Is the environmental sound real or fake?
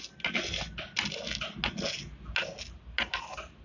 real